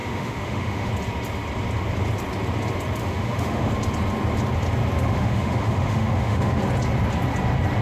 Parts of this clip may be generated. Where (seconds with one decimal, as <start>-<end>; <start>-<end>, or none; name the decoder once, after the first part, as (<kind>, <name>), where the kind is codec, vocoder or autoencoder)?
0.0-0.9 (autoencoder, DAC-VAE); 3.0-3.7; 5.0-6.6